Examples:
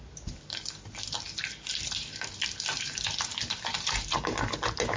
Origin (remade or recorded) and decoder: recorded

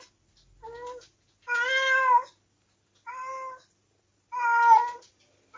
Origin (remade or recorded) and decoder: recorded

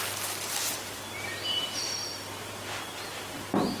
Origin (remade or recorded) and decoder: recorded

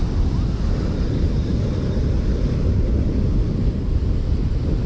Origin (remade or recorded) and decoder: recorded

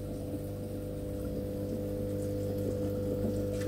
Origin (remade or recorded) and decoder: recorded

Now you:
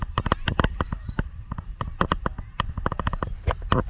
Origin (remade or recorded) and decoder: remade, vocoder, BigVGAN v2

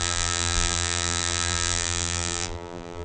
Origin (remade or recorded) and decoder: remade, vocoder, BigVGAN v2